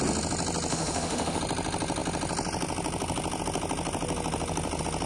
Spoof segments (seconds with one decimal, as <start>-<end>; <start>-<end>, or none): 0.7-1.4